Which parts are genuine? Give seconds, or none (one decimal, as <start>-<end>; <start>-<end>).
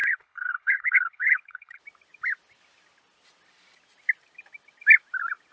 1.8-5.5